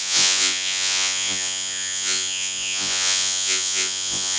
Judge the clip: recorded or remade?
remade